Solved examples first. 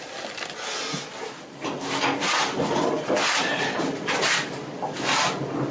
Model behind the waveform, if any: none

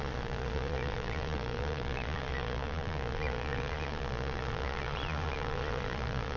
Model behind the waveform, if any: vocoder, Vocos